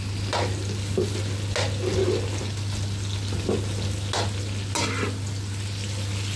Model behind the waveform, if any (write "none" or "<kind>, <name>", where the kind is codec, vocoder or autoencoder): none